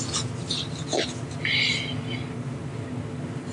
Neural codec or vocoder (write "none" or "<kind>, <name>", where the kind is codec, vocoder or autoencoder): none